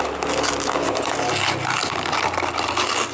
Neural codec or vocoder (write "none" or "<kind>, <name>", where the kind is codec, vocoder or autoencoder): none